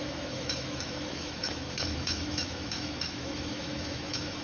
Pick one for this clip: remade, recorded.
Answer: remade